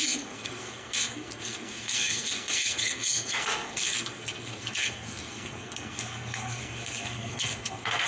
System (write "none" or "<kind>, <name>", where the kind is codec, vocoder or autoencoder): codec, SNAC